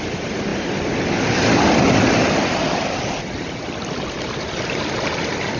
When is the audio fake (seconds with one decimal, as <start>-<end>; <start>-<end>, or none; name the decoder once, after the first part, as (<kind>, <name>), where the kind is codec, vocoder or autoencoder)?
none